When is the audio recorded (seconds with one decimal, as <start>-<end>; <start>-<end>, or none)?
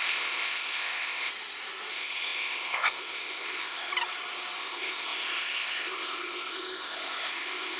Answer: 1.3-1.9; 3.9-4.6